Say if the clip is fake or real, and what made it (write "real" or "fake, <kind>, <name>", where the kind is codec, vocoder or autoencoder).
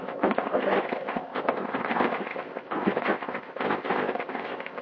fake, codec, ZipCodec